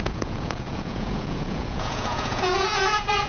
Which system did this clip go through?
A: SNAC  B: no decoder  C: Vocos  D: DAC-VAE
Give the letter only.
C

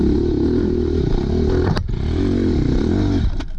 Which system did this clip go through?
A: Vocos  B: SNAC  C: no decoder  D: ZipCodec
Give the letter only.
C